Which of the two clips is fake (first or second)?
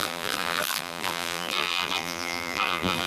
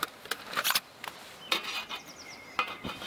first